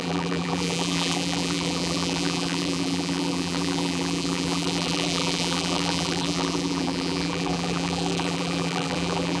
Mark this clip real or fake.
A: fake